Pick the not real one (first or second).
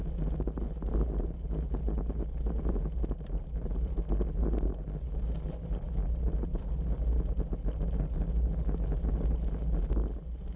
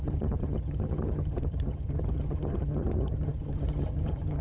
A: second